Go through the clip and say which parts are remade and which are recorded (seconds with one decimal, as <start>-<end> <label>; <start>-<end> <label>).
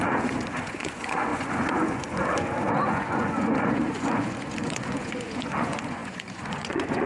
0.0-7.1 remade